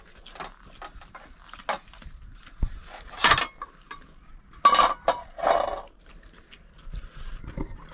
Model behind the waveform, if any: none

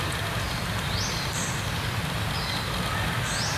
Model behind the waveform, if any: none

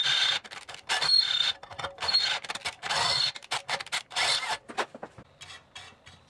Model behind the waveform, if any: none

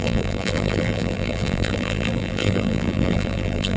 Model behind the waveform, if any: vocoder, BigVGAN v2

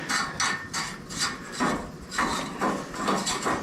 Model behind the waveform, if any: none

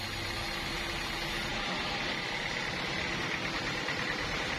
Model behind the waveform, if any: none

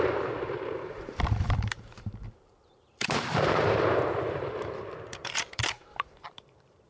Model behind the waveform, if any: vocoder, BigVGAN v2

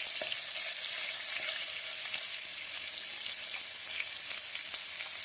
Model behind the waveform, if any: none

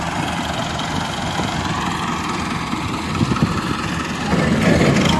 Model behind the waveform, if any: none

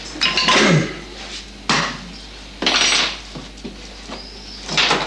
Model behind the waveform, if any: none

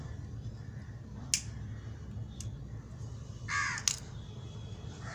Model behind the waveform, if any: none